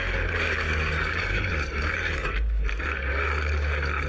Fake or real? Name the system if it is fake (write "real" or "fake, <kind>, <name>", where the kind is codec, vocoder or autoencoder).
fake, codec, DAC